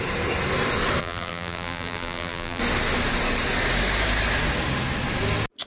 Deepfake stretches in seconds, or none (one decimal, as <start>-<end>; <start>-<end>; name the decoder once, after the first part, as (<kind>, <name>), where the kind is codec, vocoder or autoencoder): 1.0-2.6 (vocoder, BigVGAN v2)